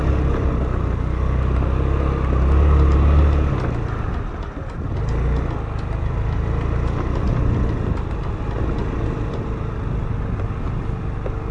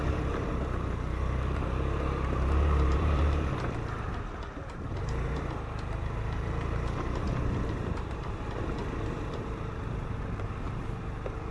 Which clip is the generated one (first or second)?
second